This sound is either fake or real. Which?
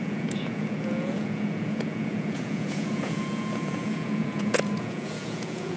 fake